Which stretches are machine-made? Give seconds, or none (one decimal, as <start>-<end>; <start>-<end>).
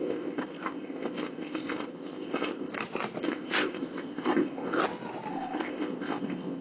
0.0-2.7; 3.2-4.8; 5.3-6.6